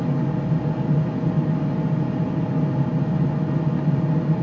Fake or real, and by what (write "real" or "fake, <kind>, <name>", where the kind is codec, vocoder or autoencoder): real